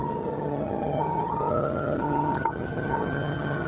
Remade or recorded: remade